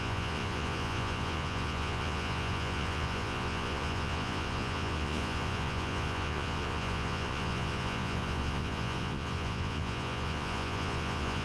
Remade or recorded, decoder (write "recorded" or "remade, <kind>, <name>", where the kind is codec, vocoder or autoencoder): remade, vocoder, Vocos